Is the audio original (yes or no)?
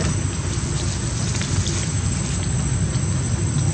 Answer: yes